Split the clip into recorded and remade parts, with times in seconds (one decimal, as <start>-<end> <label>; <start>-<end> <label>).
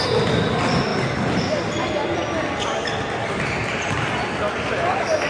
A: 0.0-5.3 recorded